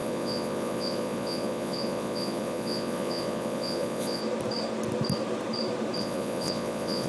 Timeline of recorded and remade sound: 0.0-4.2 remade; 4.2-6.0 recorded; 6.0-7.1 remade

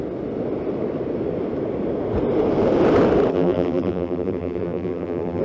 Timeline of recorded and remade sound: 0.0-3.3 recorded; 3.3-5.4 remade